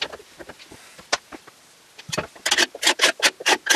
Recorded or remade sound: recorded